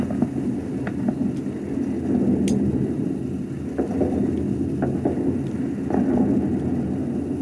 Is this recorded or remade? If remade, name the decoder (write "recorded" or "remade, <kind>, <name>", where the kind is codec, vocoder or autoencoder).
recorded